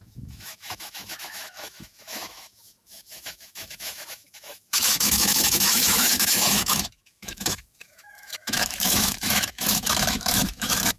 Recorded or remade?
remade